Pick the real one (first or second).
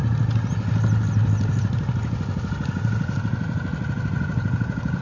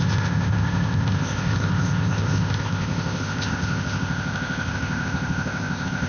first